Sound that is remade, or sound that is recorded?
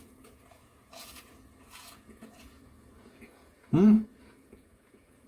remade